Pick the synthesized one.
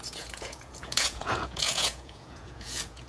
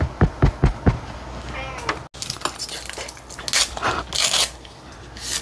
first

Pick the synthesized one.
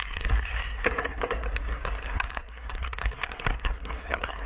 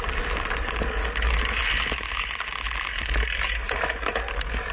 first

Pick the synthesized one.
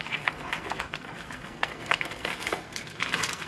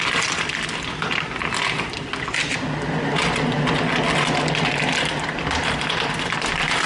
first